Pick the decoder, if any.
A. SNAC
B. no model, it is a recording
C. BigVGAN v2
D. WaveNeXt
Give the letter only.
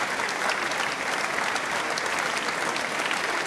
B